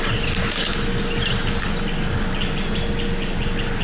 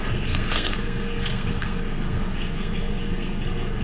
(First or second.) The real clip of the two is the first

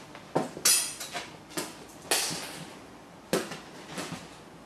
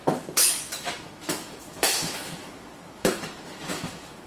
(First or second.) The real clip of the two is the first